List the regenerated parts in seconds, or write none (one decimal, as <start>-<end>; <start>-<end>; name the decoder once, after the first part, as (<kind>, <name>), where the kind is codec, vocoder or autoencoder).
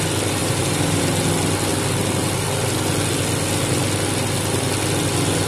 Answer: 0.4-1.0 (vocoder, BigVGAN v2)